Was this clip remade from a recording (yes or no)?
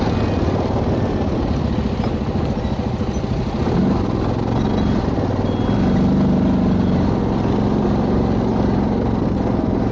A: no